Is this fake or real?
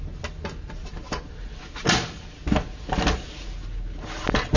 real